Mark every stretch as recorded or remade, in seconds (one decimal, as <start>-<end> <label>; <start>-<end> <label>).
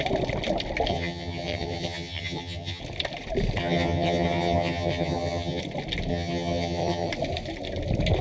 0.0-0.9 recorded; 0.9-2.8 remade; 2.8-3.6 recorded; 3.6-5.6 remade; 5.6-6.1 recorded; 6.1-7.1 remade; 7.1-8.2 recorded